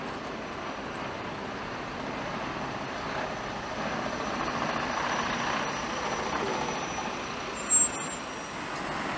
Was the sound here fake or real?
real